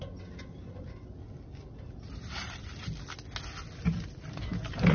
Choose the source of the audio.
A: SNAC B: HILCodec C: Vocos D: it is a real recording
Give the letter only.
D